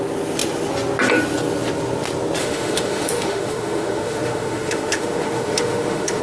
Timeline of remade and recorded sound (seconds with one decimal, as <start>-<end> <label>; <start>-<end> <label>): 0.0-2.4 recorded; 2.4-6.2 remade